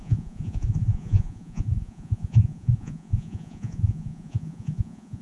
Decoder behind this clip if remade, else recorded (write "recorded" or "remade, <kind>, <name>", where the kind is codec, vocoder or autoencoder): remade, vocoder, Vocos